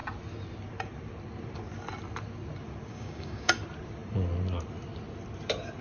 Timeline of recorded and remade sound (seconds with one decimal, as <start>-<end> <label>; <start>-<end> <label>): 0.0-2.9 recorded; 2.9-3.5 remade; 3.5-5.8 recorded